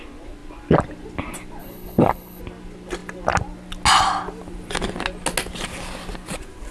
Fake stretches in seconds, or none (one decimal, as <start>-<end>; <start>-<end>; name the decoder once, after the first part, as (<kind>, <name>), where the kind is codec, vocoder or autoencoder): 1.6-2.4 (codec, HILCodec)

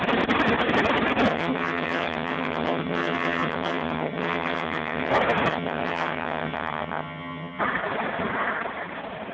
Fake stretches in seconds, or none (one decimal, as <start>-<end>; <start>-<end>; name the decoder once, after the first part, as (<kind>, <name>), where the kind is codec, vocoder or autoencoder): 1.3-5.1 (vocoder, HiFi-GAN); 5.5-7.6

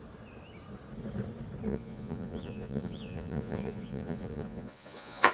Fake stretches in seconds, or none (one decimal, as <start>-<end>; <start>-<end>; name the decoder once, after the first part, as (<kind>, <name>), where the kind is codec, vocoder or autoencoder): 1.7-5.3 (vocoder, Vocos)

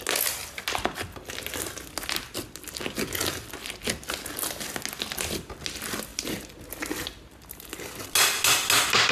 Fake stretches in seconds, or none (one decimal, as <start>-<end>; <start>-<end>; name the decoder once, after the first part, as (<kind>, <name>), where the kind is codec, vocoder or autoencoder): none